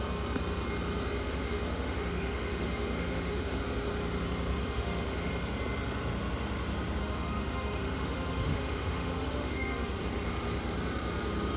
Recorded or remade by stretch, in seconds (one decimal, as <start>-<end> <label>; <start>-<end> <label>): 0.0-1.2 recorded; 1.2-3.6 remade; 3.6-4.6 recorded; 4.6-5.3 remade; 5.3-7.0 recorded; 7.0-10.0 remade; 10.0-11.6 recorded